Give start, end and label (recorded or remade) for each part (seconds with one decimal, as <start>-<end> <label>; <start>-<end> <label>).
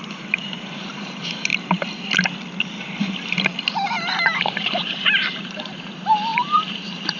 0.0-1.5 remade; 1.5-4.4 recorded; 4.4-7.2 remade